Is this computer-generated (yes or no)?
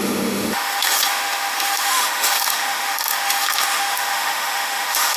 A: yes